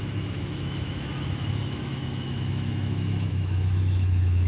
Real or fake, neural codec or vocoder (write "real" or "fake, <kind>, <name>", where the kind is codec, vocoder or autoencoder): fake, autoencoder, DAC-VAE